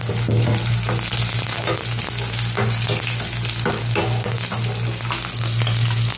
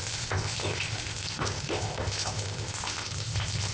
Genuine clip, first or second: first